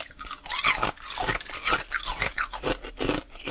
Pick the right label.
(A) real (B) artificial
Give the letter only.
A